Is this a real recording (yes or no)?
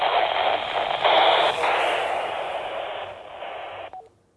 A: yes